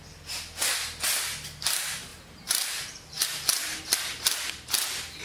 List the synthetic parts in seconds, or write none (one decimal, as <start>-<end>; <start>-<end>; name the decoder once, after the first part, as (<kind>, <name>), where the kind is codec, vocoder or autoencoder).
2.1-3.8 (vocoder, BigVGAN v2)